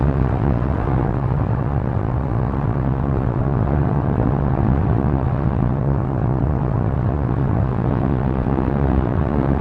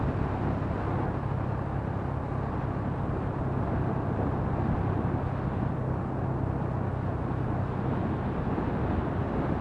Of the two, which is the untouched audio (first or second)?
second